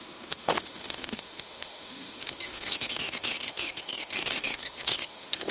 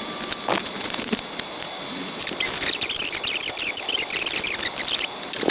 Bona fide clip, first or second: second